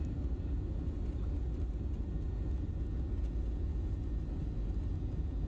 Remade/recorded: recorded